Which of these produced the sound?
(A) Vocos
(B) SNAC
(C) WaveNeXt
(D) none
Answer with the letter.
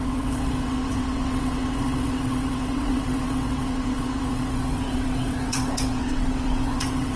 C